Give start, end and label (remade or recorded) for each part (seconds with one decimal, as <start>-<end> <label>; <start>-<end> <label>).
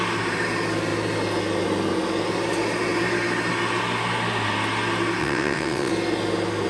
0.0-5.2 recorded; 5.2-5.9 remade; 5.9-6.7 recorded